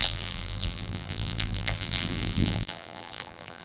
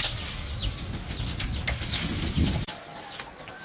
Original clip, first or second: second